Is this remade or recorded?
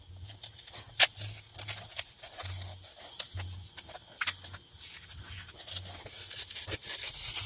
recorded